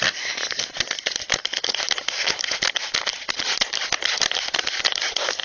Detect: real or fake real